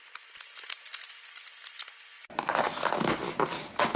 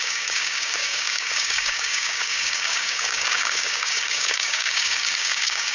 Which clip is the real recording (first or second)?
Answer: first